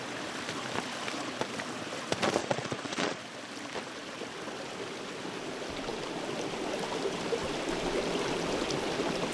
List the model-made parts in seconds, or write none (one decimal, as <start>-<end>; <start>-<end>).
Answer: 2.4-3.2